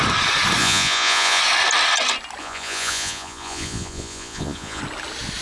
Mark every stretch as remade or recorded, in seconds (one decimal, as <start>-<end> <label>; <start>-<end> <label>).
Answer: 0.0-0.6 recorded; 0.6-1.4 remade; 1.4-2.4 recorded; 2.4-4.8 remade; 4.8-5.4 recorded